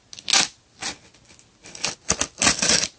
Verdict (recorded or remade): recorded